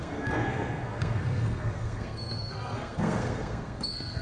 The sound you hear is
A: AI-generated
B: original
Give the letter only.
A